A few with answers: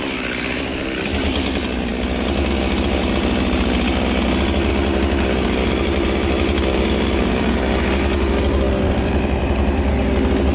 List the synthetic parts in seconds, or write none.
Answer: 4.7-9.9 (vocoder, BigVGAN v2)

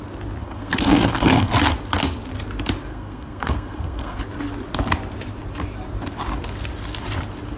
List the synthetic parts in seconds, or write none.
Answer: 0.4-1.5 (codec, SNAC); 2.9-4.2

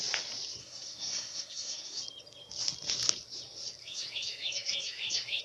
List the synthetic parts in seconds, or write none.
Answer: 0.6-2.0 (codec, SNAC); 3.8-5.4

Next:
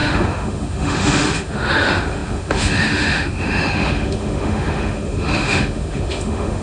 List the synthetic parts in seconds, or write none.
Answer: 0.0-6.6 (autoencoder, DAC-VAE)

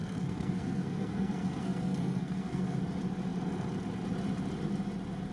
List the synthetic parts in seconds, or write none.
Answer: 0.0-2.8 (codec, SNAC)

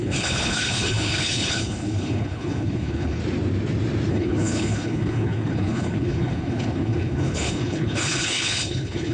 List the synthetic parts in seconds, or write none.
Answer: 0.0-3.2 (codec, HILCodec); 4.1-9.1

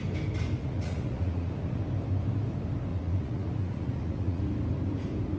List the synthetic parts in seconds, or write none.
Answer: 0.6-1.8 (vocoder, Vocos); 2.9-4.4